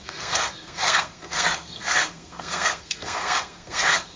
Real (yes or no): no